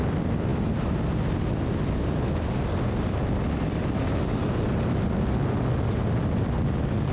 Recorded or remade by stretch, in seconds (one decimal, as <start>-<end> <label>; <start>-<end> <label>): 0.0-7.1 recorded